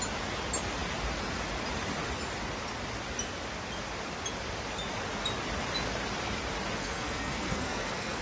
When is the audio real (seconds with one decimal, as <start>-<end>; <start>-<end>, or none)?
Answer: 0.0-6.8

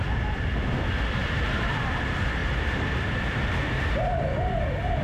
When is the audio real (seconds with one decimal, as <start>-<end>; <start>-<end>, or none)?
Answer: 0.0-1.2; 2.0-2.4; 3.8-5.0

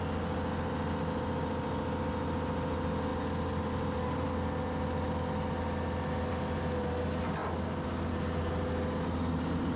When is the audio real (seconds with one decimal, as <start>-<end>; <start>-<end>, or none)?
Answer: 0.0-9.8

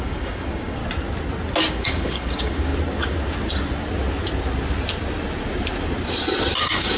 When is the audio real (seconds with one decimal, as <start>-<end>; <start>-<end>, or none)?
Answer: 0.8-1.7; 2.7-6.6

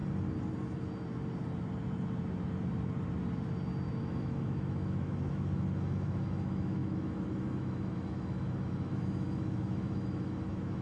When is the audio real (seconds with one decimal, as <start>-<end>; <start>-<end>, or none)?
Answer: 0.0-4.0

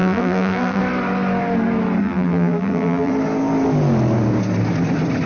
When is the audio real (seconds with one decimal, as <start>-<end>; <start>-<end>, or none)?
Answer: 0.8-2.0; 3.1-5.3